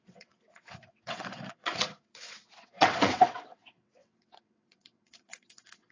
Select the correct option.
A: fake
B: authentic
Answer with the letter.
A